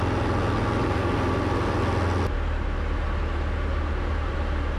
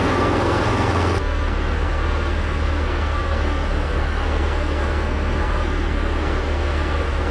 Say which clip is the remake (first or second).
second